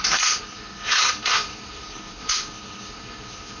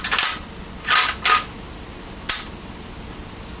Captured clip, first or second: second